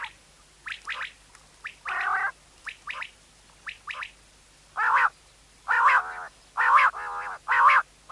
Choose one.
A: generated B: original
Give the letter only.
B